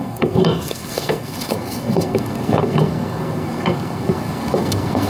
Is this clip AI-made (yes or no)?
yes